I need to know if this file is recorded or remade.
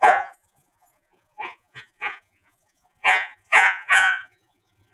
remade